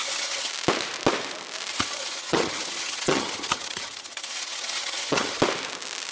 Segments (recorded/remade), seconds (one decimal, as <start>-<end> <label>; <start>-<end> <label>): 0.0-0.5 remade; 0.5-1.7 recorded; 1.7-5.4 remade; 5.4-6.1 recorded